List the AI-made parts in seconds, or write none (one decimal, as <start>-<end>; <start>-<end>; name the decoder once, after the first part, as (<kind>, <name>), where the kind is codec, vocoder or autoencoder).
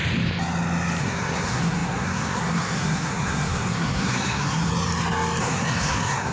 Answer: 1.0-4.7 (codec, SNAC); 5.4-6.3